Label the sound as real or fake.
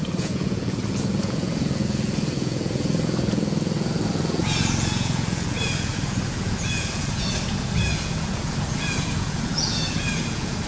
fake